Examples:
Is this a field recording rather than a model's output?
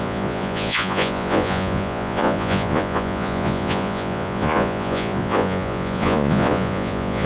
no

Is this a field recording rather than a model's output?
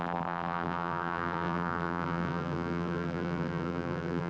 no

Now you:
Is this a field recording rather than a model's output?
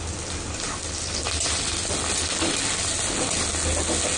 yes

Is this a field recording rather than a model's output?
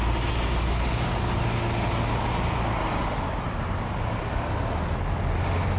yes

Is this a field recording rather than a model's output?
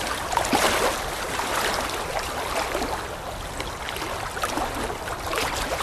yes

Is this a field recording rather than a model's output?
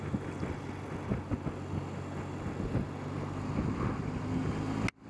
yes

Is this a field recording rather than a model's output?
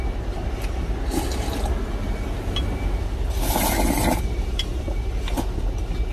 yes